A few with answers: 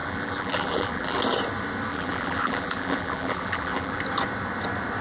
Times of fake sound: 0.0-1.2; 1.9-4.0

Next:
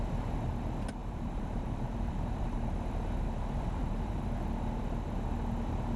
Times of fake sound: 1.0-4.3

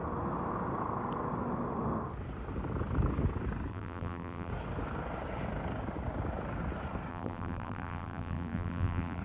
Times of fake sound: 3.7-4.5; 7.1-9.2

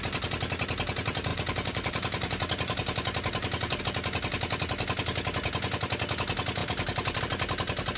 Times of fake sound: 1.3-3.8; 6.6-7.2

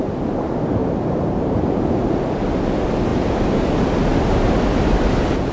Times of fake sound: 0.8-1.6; 3.1-3.9

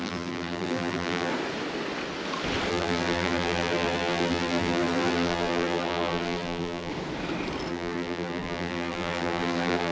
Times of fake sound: 0.0-1.3; 2.7-6.9; 7.7-9.9

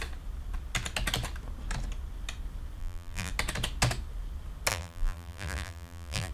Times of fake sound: 2.8-3.3; 4.7-6.3